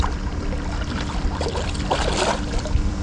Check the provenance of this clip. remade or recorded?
remade